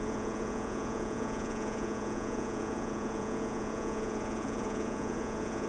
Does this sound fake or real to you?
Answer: fake